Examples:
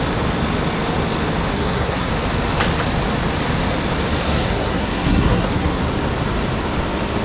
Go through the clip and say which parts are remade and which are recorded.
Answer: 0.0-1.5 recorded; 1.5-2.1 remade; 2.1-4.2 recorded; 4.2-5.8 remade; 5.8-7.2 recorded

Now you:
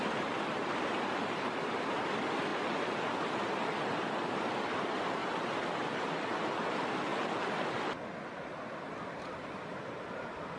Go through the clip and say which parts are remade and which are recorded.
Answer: 0.0-2.5 remade; 2.5-4.3 recorded; 4.3-5.2 remade; 5.2-5.9 recorded; 5.9-10.6 remade

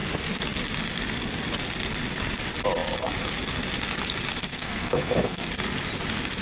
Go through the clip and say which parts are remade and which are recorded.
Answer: 0.0-4.5 recorded; 4.5-5.5 remade; 5.5-6.4 recorded